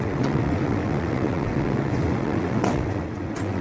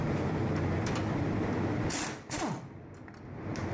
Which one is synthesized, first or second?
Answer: first